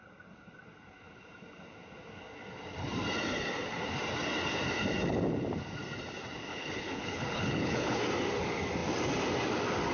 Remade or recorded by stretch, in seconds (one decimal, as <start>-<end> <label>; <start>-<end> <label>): 0.0-6.5 recorded; 6.5-8.0 remade; 8.0-9.9 recorded

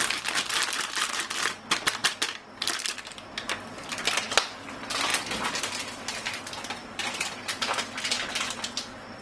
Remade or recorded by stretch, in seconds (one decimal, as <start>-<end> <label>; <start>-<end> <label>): 0.0-6.8 recorded; 6.8-7.6 remade; 7.6-9.2 recorded

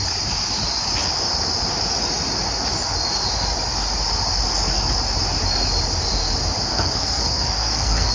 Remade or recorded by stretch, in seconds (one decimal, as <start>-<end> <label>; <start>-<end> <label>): 0.0-6.7 recorded; 6.7-8.1 remade

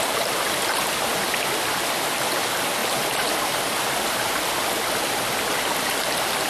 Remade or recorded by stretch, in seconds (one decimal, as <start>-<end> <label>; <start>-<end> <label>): 0.0-6.5 recorded